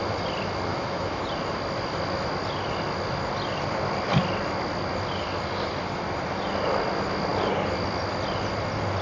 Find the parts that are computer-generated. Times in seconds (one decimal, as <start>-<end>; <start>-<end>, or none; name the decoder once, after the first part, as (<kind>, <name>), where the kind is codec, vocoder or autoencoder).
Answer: 0.7-1.2 (autoencoder, DAC-VAE)